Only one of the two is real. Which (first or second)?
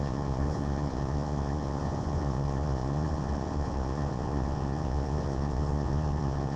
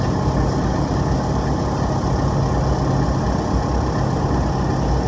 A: second